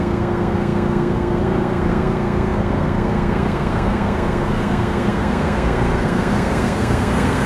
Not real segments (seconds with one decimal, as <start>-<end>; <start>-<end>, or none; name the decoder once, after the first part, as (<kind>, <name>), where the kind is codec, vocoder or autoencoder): 0.0-7.5 (codec, SNAC)